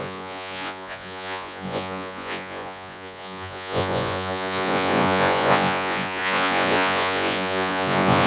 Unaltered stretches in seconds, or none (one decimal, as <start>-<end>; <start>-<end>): none